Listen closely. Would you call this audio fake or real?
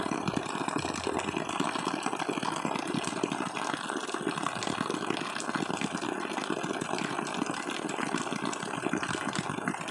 real